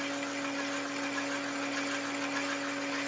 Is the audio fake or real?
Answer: real